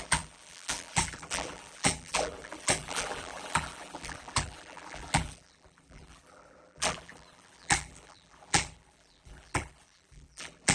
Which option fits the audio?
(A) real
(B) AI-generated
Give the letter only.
B